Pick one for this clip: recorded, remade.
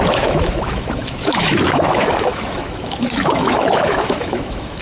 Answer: remade